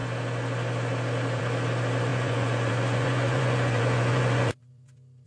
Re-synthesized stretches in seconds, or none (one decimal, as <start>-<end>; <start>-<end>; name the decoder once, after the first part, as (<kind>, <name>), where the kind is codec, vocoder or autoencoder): 2.1-4.7 (vocoder, Vocos)